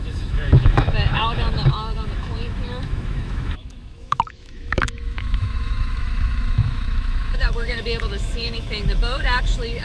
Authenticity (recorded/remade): remade